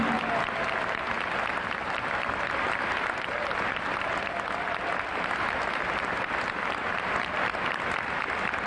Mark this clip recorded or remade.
recorded